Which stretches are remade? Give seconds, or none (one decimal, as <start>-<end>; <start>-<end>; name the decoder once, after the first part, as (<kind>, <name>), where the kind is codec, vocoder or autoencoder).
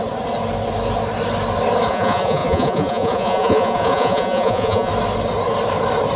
1.9-4.9 (vocoder, Vocos)